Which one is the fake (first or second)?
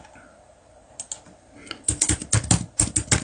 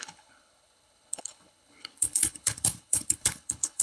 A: second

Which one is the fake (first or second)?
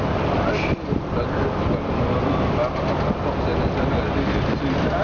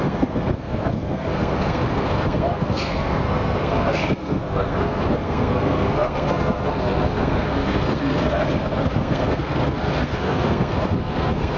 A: second